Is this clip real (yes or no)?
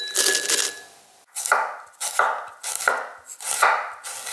yes